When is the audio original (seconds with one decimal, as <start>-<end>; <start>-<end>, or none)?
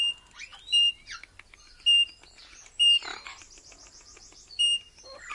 0.0-5.3